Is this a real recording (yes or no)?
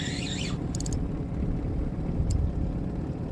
no